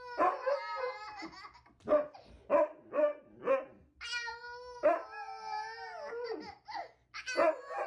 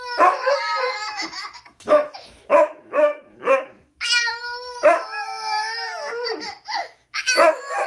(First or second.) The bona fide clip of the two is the first